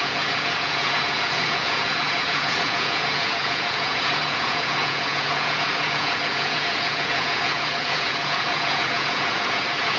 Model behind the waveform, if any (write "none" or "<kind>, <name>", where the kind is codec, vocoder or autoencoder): vocoder, Vocos